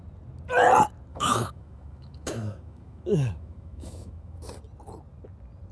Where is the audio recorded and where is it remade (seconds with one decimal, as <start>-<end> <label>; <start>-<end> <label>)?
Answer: 0.0-1.1 recorded; 1.1-4.5 remade; 4.5-5.7 recorded